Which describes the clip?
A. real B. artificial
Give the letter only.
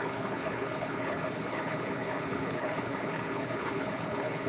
B